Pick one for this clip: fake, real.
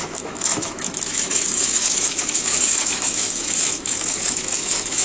fake